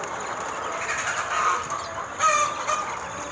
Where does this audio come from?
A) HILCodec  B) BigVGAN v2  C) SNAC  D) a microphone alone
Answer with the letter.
D